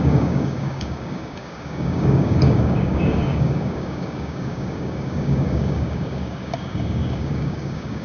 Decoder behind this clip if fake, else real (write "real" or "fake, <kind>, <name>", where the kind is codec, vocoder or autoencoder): fake, codec, DAC